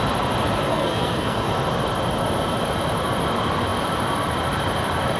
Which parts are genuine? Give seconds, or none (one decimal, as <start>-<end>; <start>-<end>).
0.0-0.7; 1.5-5.2